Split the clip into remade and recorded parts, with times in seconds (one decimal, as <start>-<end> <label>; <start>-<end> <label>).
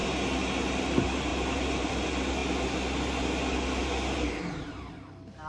0.0-1.3 recorded; 1.3-1.9 remade; 1.9-5.5 recorded